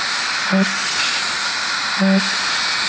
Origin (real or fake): real